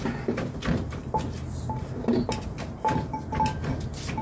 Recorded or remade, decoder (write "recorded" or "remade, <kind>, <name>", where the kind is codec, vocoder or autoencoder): recorded